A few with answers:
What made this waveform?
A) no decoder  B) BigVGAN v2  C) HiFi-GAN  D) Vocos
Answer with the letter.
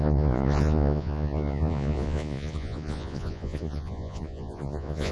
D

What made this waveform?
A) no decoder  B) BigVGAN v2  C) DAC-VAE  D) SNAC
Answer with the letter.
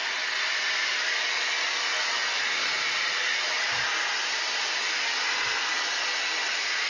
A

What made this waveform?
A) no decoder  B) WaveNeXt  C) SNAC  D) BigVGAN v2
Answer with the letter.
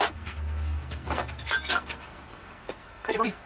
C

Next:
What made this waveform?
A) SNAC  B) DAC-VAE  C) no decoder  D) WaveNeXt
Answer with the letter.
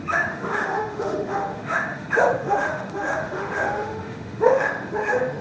B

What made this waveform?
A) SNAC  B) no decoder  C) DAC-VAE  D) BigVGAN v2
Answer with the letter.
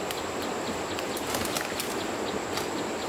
B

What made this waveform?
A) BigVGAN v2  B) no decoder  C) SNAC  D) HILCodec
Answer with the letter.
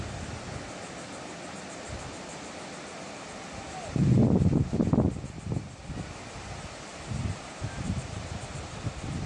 B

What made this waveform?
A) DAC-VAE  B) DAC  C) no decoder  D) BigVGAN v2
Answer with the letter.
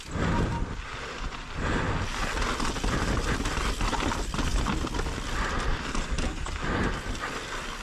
C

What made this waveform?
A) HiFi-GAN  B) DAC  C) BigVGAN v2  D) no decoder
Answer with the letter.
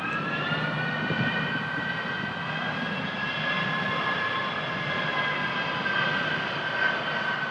D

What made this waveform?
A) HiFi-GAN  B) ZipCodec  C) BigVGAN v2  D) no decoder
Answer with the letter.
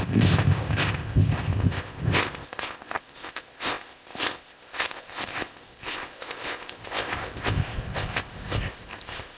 B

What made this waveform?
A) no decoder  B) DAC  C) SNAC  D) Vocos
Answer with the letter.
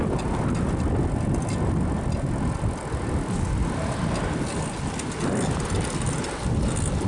A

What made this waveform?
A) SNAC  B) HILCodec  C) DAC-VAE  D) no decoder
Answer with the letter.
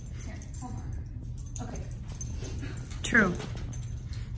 D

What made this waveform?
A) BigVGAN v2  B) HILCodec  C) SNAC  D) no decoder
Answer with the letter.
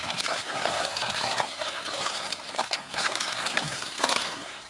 C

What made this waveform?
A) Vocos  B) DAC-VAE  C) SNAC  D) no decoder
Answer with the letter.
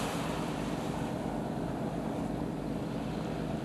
D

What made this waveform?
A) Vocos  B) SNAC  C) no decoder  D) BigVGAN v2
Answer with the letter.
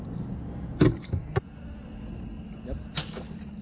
C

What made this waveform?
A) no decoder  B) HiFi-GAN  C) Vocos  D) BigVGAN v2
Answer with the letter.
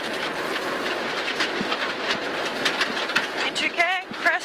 A